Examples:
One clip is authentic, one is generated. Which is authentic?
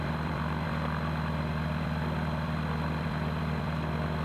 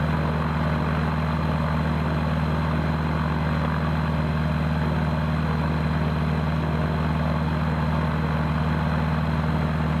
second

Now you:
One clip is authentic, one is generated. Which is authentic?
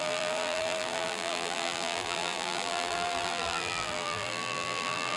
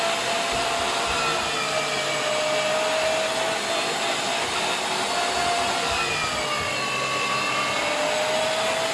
second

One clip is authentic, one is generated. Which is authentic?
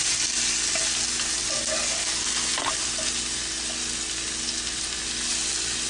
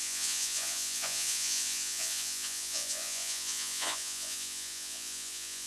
first